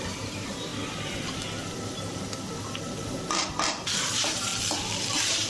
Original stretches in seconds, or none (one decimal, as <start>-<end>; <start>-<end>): 0.7-4.0; 4.5-5.1